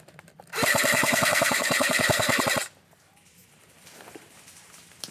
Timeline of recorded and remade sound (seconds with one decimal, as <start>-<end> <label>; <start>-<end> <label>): 0.0-0.7 recorded; 0.7-2.4 remade; 2.4-5.1 recorded